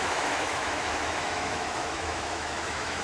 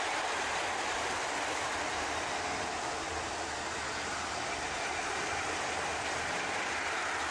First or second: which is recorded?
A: second